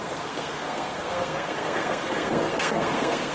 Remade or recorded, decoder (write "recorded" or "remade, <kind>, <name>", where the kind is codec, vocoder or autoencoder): remade, codec, SNAC